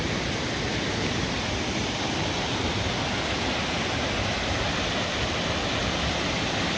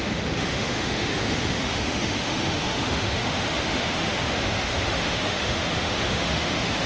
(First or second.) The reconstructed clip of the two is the second